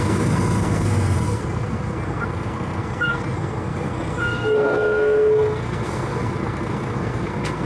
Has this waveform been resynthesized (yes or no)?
yes